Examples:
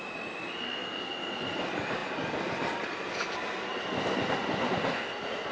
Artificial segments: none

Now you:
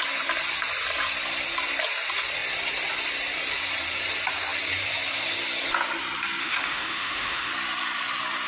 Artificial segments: 6.4-7.5

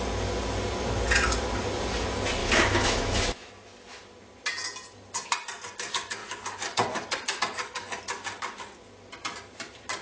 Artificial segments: 2.4-3.5

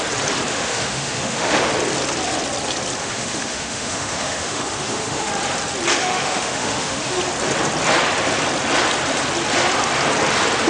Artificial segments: 0.5-1.7; 3.0-5.3; 5.9-7.2

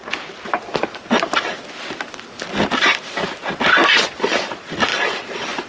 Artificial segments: none

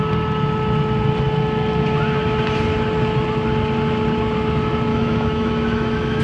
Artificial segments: 4.9-6.2

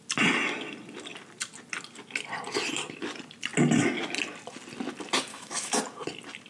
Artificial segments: 5.3-5.8

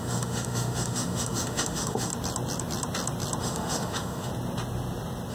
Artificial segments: 0.0-2.1; 3.4-4.3